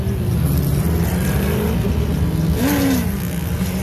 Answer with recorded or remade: recorded